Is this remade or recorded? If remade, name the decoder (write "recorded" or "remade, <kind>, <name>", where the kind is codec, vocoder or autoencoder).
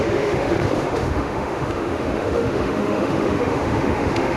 remade, autoencoder, DAC-VAE